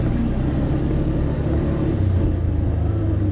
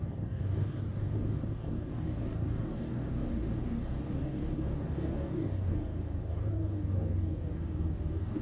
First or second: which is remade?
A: second